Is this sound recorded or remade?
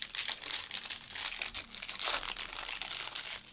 recorded